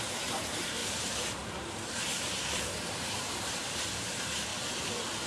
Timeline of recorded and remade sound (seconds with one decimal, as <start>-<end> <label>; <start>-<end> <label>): 0.0-4.5 remade; 4.5-5.3 recorded